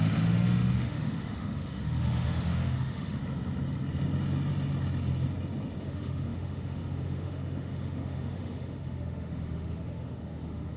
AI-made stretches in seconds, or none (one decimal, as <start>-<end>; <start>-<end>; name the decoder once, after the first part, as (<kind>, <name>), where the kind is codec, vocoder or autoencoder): 0.0-3.2 (autoencoder, DAC-VAE); 5.8-10.8